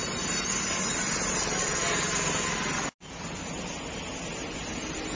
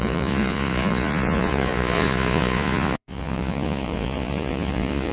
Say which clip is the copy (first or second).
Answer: second